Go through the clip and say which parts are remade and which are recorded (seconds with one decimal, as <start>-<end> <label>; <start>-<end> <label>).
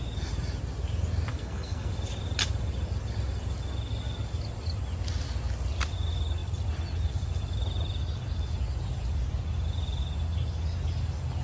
0.0-1.3 recorded; 1.3-1.9 remade; 1.9-11.4 recorded